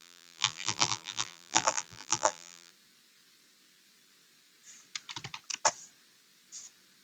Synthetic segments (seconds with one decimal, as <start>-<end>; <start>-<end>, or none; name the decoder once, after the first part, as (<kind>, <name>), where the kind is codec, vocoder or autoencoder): 0.0-2.7 (vocoder, BigVGAN v2)